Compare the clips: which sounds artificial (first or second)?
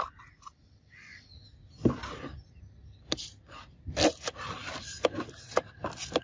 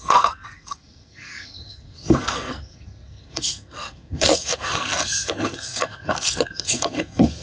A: second